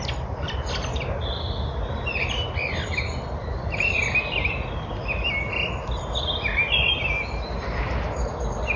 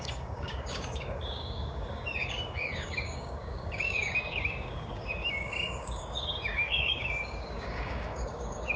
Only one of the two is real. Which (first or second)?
first